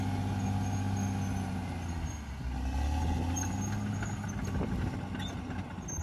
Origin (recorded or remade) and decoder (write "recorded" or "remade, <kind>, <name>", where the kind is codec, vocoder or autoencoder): recorded